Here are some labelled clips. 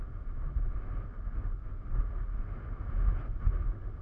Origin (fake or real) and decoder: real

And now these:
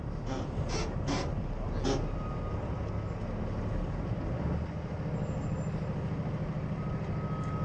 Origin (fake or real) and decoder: real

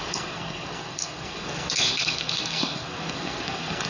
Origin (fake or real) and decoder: fake, codec, SNAC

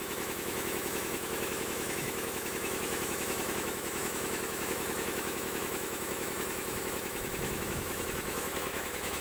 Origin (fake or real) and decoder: fake, autoencoder, DAC-VAE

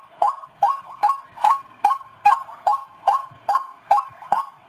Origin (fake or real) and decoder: fake, codec, SNAC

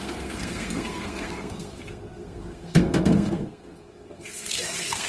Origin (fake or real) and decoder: fake, codec, SNAC